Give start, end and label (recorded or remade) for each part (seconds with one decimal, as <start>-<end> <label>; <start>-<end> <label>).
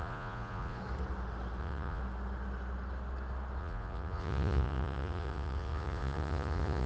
0.0-0.8 remade; 0.8-1.6 recorded; 1.6-2.0 remade; 2.0-3.6 recorded; 3.6-6.9 remade